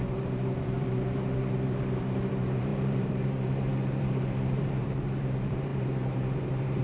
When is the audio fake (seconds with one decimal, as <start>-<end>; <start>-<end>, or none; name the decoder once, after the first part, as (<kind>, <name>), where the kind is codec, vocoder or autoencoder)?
0.0-6.8 (vocoder, BigVGAN v2)